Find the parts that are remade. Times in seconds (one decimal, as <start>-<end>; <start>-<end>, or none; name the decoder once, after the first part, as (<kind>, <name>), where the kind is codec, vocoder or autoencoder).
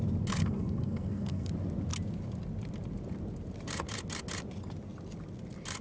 0.4-1.5 (codec, SNAC)